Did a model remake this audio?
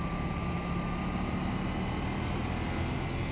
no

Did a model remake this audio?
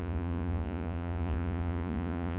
yes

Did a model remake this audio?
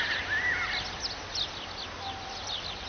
no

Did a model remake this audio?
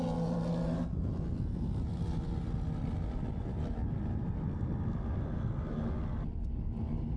no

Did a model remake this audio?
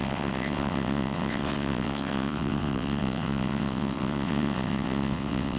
yes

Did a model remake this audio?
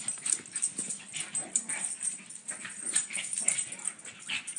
no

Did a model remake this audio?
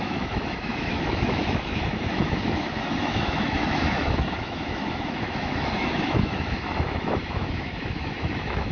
yes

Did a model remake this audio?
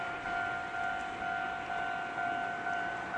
no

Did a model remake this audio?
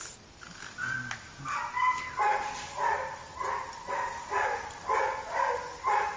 no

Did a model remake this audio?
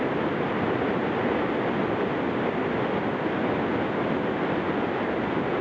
no